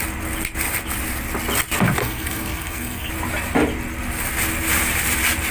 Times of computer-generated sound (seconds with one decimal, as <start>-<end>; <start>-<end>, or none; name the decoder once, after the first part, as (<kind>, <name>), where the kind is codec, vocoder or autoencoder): 2.0-3.1 (codec, SNAC)

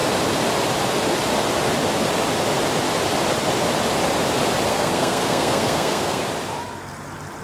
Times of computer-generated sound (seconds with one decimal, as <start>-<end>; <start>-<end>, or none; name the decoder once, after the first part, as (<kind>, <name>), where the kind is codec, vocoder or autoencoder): 4.7-6.2 (codec, SNAC)

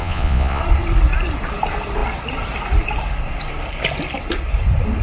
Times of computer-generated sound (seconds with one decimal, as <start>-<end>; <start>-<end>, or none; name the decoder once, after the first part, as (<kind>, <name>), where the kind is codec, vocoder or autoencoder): 0.0-0.6 (vocoder, Vocos)

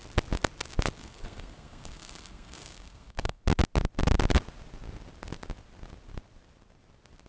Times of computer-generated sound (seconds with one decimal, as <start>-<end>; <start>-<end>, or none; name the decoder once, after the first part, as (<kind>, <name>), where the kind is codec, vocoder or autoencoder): 1.0-3.4 (codec, SNAC)

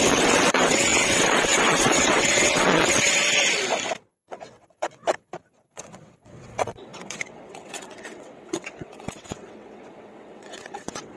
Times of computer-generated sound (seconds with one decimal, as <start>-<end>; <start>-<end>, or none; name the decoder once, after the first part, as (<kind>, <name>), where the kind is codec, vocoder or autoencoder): 0.0-3.2 (vocoder, WaveNeXt); 4.1-11.2

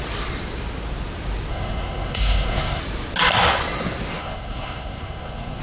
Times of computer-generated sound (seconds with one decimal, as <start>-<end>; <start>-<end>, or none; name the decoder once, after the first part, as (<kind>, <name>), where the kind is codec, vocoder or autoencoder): 1.5-2.8 (codec, SNAC); 4.2-5.6